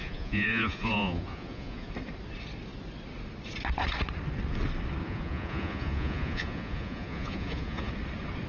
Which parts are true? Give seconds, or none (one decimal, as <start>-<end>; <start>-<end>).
1.9-5.0; 7.9-8.5